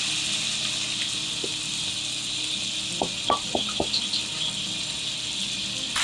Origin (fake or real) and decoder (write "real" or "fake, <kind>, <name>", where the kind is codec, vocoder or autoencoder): real